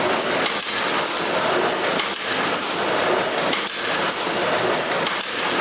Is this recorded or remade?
recorded